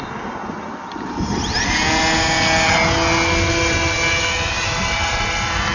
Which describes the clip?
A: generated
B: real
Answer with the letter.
B